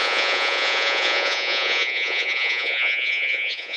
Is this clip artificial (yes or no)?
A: yes